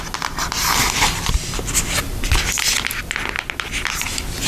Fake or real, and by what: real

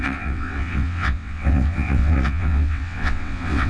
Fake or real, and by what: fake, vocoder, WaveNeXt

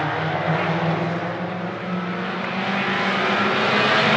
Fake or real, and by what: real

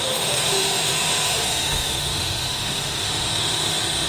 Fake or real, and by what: fake, autoencoder, DAC-VAE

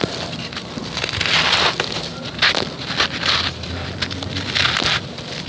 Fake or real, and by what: real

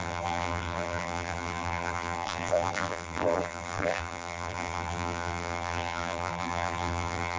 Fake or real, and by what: fake, vocoder, BigVGAN v2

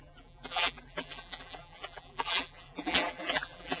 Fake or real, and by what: fake, vocoder, BigVGAN v2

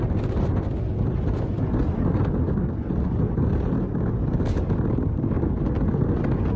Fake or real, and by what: real